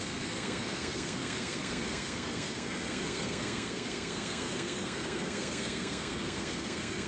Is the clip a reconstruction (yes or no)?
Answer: yes